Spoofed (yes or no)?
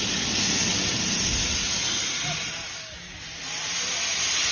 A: no